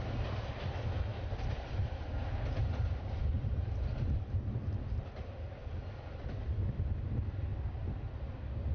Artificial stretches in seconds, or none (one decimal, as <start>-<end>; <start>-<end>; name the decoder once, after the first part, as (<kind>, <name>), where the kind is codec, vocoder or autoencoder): 1.1-1.7 (vocoder, BigVGAN v2); 2.6-4.4